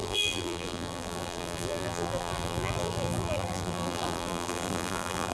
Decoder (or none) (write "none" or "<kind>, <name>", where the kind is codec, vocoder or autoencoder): vocoder, BigVGAN v2